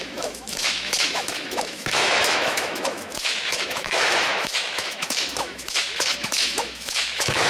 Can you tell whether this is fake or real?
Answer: fake